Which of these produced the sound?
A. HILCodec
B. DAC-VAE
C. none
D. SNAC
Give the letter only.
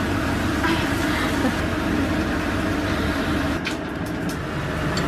C